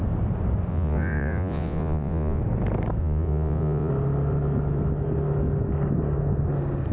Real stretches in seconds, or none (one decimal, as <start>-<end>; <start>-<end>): 0.0-0.7; 2.4-3.0; 3.9-6.9